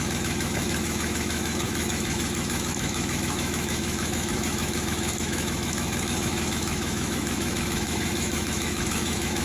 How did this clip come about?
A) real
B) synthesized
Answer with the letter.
B